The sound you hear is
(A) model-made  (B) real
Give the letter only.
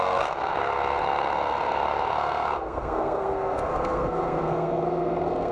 A